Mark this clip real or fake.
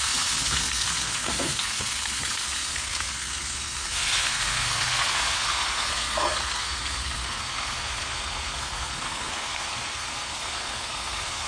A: fake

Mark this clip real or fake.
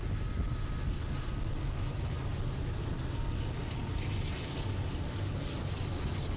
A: real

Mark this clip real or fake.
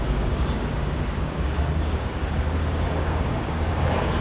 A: fake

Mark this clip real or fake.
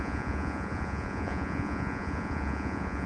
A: fake